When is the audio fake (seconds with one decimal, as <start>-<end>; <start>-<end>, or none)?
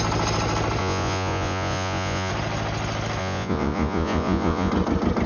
0.8-2.3; 3.2-4.7